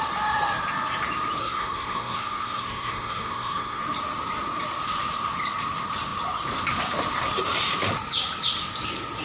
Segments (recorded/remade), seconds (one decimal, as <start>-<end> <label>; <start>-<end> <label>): 0.0-1.4 recorded; 1.4-3.8 remade; 3.8-9.2 recorded